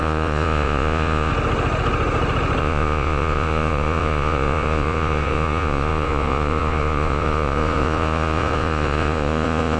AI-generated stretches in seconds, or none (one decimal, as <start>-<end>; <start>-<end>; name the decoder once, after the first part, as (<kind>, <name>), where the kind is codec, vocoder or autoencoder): 0.0-1.3 (vocoder, Vocos); 2.6-9.8

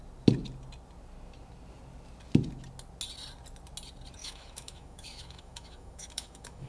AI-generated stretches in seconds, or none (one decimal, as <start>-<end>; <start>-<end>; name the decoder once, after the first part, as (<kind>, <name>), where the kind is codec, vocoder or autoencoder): 4.2-6.7 (autoencoder, DAC-VAE)